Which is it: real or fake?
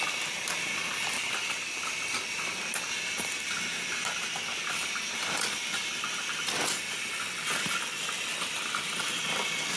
real